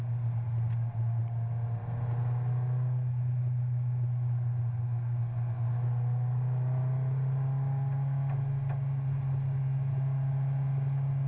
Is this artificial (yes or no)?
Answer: no